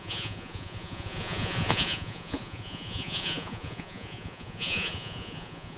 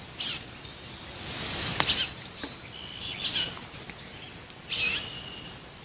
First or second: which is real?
second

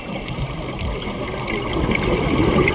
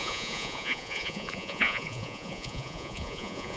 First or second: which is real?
first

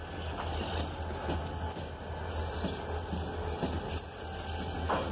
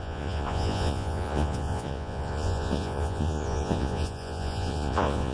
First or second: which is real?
first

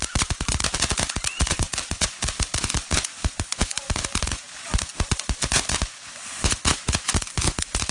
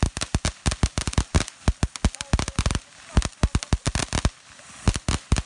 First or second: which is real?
second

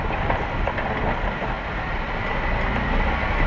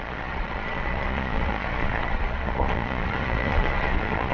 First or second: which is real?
first